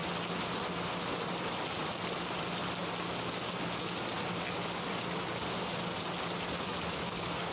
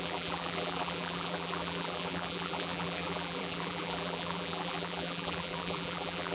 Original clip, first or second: first